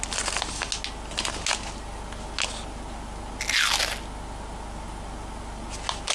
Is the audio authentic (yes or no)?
yes